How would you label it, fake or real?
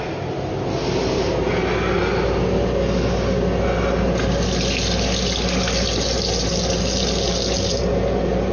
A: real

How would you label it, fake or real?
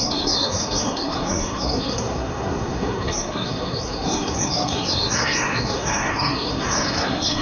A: fake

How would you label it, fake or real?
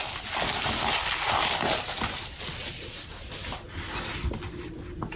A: real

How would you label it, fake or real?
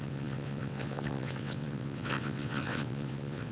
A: fake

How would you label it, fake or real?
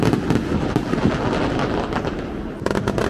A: real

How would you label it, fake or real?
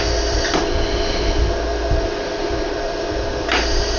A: real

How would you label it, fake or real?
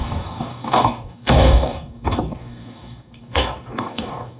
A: fake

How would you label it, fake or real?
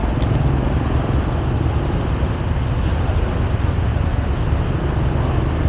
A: real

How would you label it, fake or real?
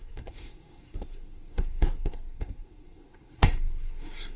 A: fake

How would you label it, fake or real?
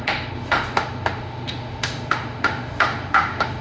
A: fake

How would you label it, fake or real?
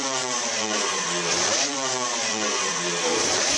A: fake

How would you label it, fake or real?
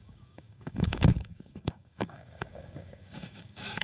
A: fake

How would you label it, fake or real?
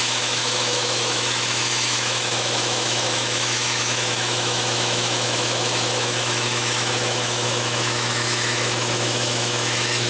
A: fake